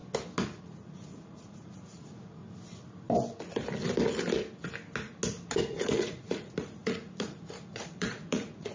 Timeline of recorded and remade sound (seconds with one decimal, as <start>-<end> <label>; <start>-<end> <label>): 0.0-0.6 recorded; 0.6-2.4 remade; 2.4-5.6 recorded; 5.6-8.7 remade